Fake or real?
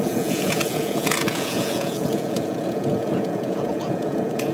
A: fake